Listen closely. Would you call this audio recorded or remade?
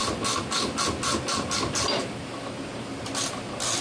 recorded